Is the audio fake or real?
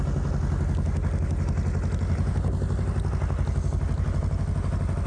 real